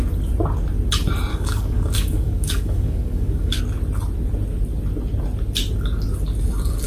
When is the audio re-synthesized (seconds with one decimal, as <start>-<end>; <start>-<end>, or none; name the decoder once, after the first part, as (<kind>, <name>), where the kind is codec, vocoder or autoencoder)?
1.3-3.6 (codec, DAC)